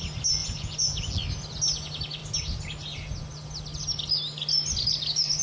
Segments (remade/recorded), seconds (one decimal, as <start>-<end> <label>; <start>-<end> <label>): 0.0-0.4 recorded; 0.4-1.1 remade; 1.1-5.4 recorded